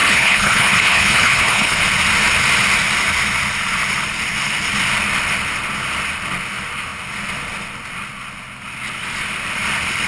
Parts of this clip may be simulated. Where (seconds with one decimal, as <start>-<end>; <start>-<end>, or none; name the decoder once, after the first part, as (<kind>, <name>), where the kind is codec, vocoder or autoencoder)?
0.0-1.8 (codec, HILCodec)